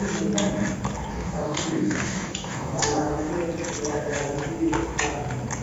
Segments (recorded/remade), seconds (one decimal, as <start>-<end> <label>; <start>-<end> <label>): 0.0-1.1 recorded; 1.1-3.3 remade; 3.3-5.6 recorded